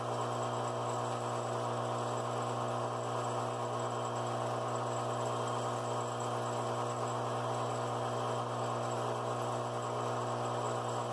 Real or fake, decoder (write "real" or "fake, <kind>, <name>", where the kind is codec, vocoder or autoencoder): real